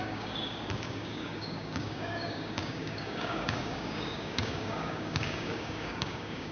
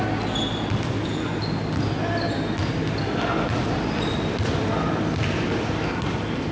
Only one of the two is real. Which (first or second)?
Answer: second